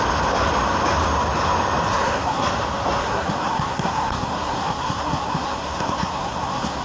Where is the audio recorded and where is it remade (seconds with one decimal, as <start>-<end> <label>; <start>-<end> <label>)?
0.0-1.9 recorded; 1.9-2.5 remade; 2.5-3.0 recorded; 3.0-6.8 remade